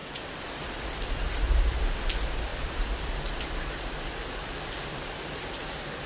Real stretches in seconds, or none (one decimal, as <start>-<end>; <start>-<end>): none